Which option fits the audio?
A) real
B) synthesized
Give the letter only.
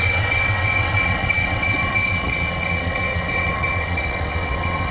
B